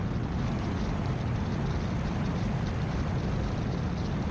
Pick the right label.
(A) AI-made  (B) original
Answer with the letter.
A